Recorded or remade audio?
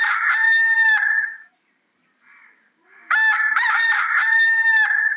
remade